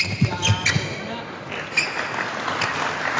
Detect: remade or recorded recorded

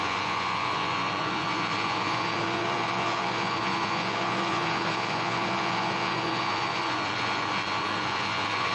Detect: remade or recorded remade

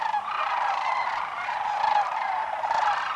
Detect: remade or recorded recorded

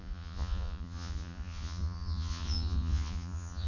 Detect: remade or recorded remade